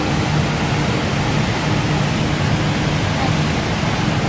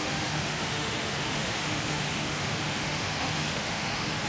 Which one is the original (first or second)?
first